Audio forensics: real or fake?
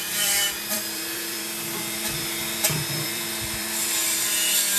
fake